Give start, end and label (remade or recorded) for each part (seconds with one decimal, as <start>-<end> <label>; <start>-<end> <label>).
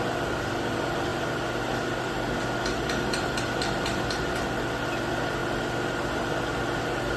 0.0-7.2 recorded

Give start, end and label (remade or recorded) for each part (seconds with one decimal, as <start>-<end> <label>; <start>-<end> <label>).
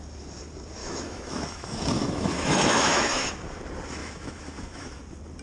0.0-0.8 recorded; 0.8-3.3 remade; 3.3-4.0 recorded; 4.0-5.0 remade; 5.0-5.4 recorded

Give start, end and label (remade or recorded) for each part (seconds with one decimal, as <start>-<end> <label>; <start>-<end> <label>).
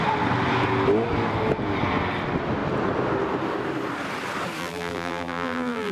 0.0-4.6 recorded; 4.6-5.9 remade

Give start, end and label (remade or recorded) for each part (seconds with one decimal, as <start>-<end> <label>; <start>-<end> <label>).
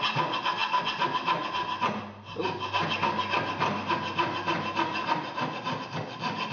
0.0-6.5 recorded